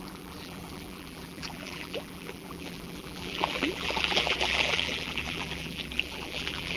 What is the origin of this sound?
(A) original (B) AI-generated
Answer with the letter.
B